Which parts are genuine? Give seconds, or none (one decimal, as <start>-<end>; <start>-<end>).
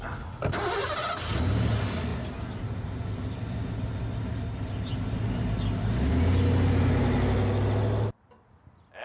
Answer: 0.0-9.0